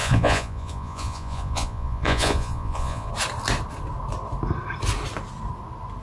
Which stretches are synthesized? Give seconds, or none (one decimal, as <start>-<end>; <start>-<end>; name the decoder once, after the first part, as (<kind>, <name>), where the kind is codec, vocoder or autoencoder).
0.0-3.1 (vocoder, Vocos)